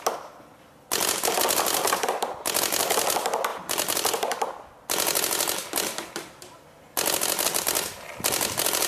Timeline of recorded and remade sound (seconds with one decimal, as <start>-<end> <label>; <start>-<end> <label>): 0.0-8.9 recorded